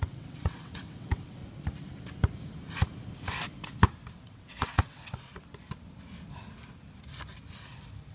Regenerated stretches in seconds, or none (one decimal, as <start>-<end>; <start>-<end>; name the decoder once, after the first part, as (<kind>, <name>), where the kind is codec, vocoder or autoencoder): 0.0-1.4 (vocoder, WaveNeXt); 4.2-5.3